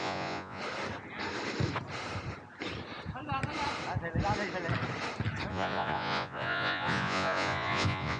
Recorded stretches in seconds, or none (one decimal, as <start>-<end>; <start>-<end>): 0.6-5.5

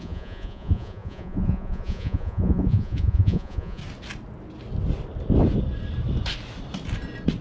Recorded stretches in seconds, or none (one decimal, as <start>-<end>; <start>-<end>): 3.8-7.4

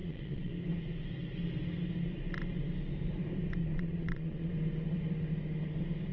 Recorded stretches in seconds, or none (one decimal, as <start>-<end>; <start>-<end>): 0.5-3.6; 4.5-6.1

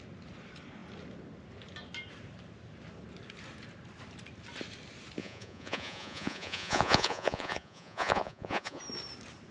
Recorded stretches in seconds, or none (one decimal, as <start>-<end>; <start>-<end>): 0.0-5.2; 8.8-9.5

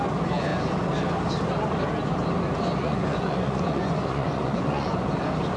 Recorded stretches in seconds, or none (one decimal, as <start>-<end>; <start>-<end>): 0.0-2.8; 5.1-5.6